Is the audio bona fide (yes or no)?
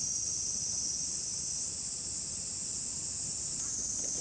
yes